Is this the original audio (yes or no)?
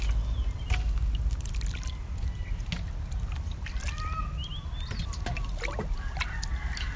yes